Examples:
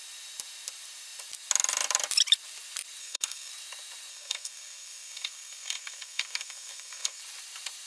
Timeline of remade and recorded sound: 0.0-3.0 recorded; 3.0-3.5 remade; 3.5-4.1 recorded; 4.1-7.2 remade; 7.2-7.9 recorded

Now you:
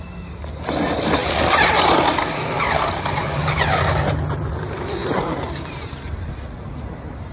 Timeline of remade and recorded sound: 0.0-5.0 recorded; 5.0-6.3 remade; 6.3-7.3 recorded

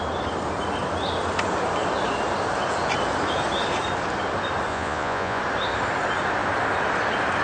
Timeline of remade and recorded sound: 0.0-4.7 recorded; 4.7-5.4 remade; 5.4-7.4 recorded

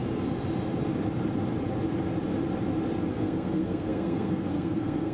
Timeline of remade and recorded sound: 0.0-3.1 recorded; 3.1-5.1 remade

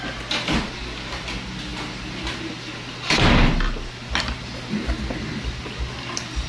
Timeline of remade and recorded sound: 0.0-6.5 recorded